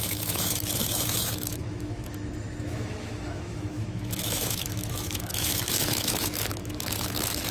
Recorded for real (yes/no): no